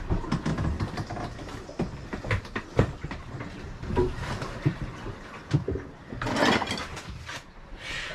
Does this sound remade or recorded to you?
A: recorded